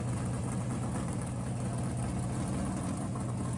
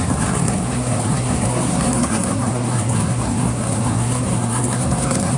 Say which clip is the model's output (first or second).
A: second